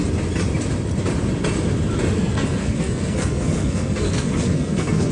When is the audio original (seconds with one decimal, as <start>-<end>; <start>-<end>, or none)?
0.0-2.2